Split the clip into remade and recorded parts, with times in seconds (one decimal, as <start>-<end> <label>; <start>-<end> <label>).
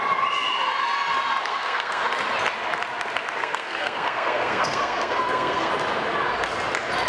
0.0-1.4 recorded; 1.4-2.0 remade; 2.0-3.4 recorded; 3.4-5.7 remade; 5.7-7.1 recorded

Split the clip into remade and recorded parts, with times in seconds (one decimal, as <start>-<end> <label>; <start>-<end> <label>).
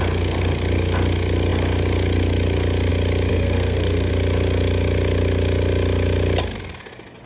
0.0-3.3 recorded; 3.3-4.1 remade; 4.1-7.3 recorded